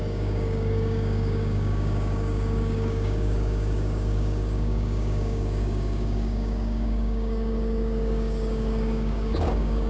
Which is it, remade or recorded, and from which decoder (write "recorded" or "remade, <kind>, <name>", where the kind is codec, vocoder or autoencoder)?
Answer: remade, codec, DAC